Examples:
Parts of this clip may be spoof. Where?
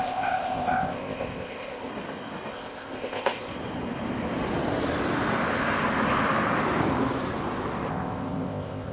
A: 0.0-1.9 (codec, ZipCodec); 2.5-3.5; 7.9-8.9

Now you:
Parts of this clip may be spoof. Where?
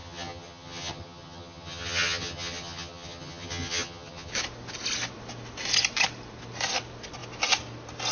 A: 0.0-4.3 (vocoder, HiFi-GAN)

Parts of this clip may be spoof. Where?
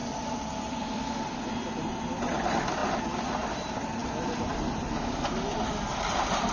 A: 0.0-1.7 (vocoder, BigVGAN v2); 2.8-3.3; 4.0-4.7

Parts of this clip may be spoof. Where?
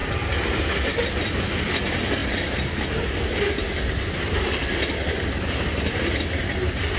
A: none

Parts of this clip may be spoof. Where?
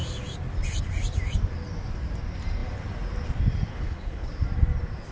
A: 3.7-4.3 (codec, HILCodec)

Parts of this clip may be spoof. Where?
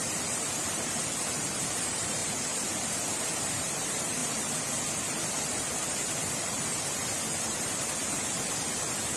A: 0.0-4.2 (vocoder, BigVGAN v2); 6.2-7.0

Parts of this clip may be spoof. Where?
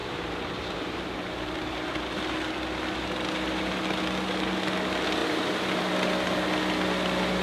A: 0.0-2.0 (vocoder, BigVGAN v2); 5.2-5.9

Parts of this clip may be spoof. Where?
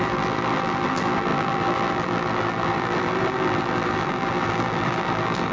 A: 0.0-5.5 (vocoder, BigVGAN v2)